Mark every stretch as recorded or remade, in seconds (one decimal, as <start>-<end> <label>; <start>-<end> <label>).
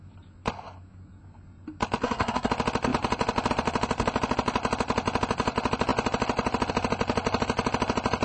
0.0-2.0 recorded; 2.0-2.5 remade; 2.5-8.2 recorded